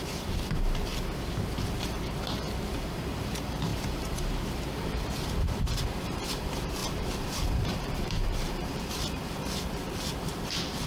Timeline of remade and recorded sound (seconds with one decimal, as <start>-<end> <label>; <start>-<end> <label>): 0.0-0.9 remade; 0.9-1.7 recorded; 1.7-10.9 remade